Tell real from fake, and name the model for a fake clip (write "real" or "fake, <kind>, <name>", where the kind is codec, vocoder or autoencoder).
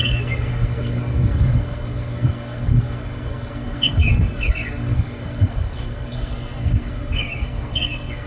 fake, codec, SNAC